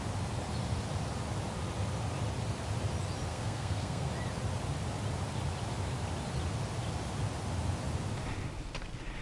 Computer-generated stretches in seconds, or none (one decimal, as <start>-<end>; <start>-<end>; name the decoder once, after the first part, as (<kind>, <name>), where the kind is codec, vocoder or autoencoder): 3.3-4.1 (codec, SNAC)